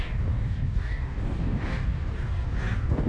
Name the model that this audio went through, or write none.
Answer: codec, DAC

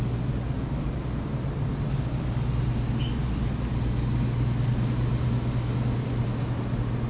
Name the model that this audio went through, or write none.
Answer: none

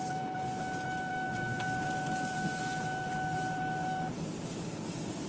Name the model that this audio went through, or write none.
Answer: none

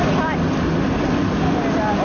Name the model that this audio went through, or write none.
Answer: none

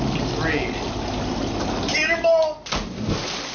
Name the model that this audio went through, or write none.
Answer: none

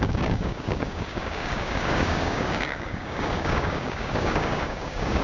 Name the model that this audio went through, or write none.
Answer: codec, DAC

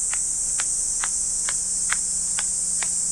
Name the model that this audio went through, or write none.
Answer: none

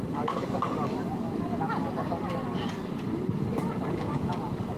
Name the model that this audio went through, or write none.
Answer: codec, DAC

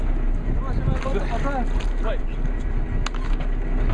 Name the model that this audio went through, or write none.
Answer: none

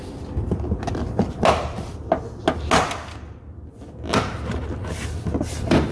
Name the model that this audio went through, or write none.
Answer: none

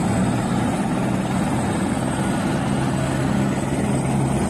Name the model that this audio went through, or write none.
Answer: none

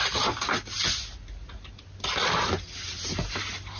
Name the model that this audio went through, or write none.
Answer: none